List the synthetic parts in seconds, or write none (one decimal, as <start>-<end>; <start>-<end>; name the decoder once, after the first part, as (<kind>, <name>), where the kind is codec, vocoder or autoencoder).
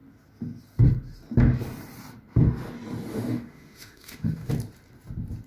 3.1-4.5 (autoencoder, DAC-VAE)